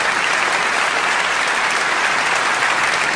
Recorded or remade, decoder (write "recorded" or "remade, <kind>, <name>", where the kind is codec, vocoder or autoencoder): recorded